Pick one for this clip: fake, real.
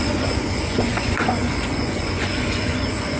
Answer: fake